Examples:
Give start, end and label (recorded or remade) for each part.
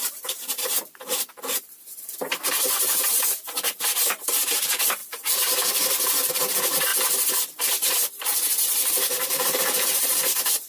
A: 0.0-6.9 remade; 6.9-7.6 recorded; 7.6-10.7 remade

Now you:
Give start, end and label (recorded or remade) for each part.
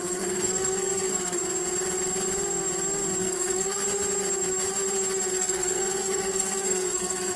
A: 0.0-1.4 remade; 1.4-3.2 recorded; 3.2-3.8 remade; 3.8-5.3 recorded; 5.3-7.4 remade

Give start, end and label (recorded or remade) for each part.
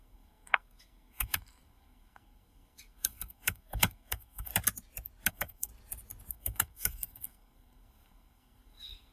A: 0.0-4.5 remade; 4.5-5.3 recorded; 5.3-5.7 remade; 5.7-6.3 recorded; 6.3-9.1 remade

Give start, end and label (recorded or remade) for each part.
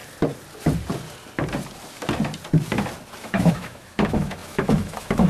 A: 0.0-3.2 recorded; 3.2-5.3 remade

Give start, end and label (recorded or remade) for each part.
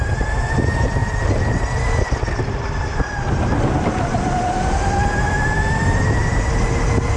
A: 0.0-7.2 recorded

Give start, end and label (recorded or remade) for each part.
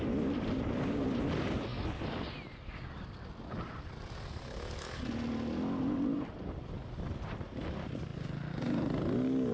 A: 0.0-9.5 recorded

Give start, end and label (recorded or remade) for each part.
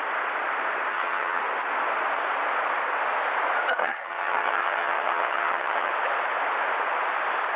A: 0.0-0.9 recorded; 0.9-1.4 remade; 1.4-3.8 recorded; 3.8-5.9 remade; 5.9-7.6 recorded